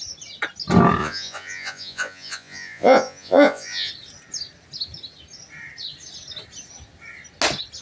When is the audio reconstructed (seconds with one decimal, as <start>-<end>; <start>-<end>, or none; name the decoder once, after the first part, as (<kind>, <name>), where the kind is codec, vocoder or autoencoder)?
1.0-3.9 (vocoder, Vocos)